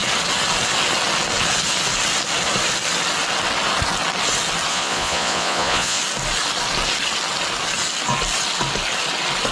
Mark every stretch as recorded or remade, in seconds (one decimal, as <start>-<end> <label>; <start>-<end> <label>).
0.0-4.7 recorded; 4.7-6.0 remade; 6.0-9.5 recorded